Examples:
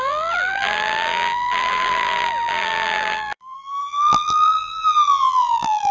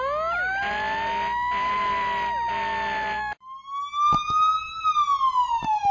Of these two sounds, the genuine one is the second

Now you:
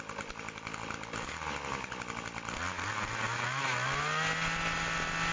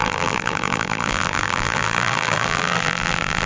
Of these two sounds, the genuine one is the first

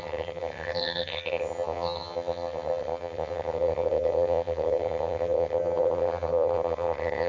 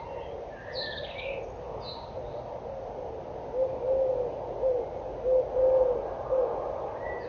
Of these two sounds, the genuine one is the second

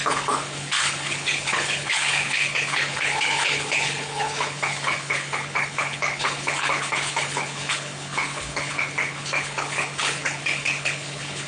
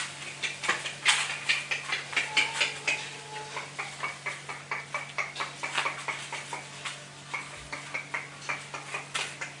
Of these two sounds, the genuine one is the second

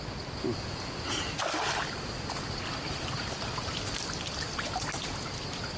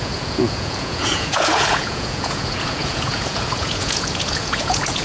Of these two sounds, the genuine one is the first